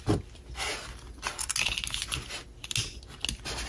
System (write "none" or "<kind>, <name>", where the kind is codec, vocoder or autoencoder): none